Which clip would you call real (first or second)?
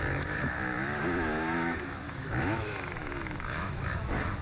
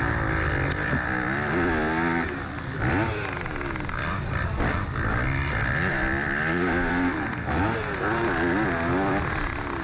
second